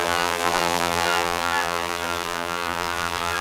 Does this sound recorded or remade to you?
remade